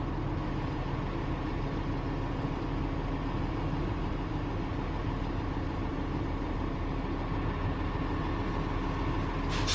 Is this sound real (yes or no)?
yes